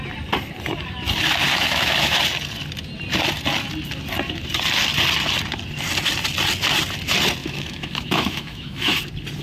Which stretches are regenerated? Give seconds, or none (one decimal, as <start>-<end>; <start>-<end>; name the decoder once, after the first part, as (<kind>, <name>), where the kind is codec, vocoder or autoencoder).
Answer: 1.5-2.2 (autoencoder, DAC-VAE); 7.4-9.0